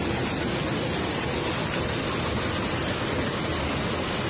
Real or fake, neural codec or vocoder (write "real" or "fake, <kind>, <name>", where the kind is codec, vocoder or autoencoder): real